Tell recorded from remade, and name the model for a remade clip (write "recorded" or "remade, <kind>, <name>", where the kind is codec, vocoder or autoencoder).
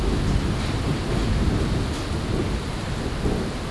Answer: recorded